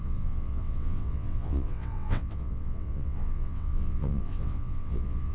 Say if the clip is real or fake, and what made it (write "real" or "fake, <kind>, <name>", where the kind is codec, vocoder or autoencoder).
fake, vocoder, WaveNeXt